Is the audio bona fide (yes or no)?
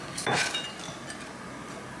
yes